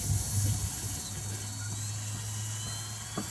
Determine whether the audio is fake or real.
real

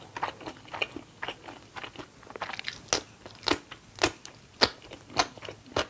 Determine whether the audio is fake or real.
real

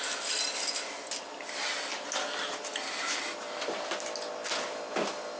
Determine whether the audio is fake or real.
real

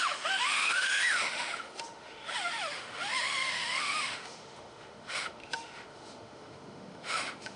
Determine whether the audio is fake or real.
fake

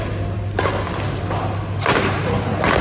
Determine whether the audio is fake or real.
real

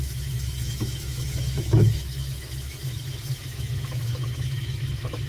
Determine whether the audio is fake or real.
fake